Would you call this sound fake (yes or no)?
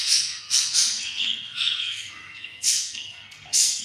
yes